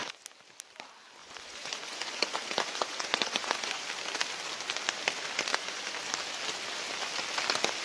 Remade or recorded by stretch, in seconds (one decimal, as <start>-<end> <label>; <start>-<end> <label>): 0.0-1.2 recorded; 1.2-3.8 remade; 3.8-5.5 recorded; 5.5-6.0 remade; 6.0-7.8 recorded